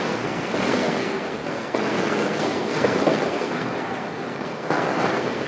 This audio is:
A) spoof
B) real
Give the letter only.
A